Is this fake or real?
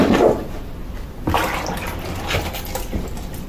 real